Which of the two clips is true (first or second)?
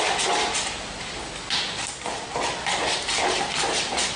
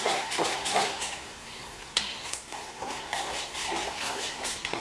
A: first